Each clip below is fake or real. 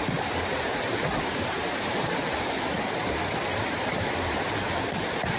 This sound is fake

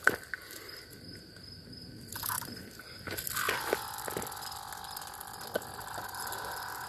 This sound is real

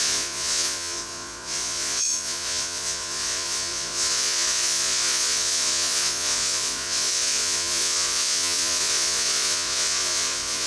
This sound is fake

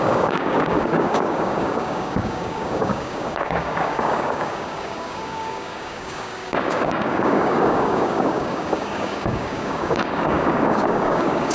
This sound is fake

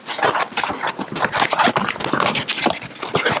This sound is real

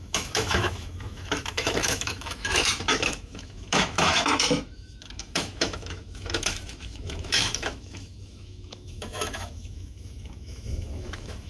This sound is fake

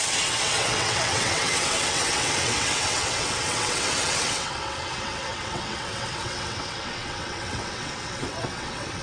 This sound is fake